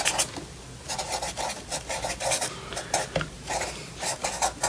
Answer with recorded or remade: recorded